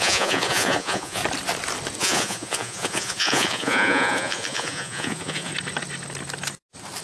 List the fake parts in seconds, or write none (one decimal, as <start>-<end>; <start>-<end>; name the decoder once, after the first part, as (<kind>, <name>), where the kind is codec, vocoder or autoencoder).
0.0-1.2 (vocoder, Vocos); 2.0-5.5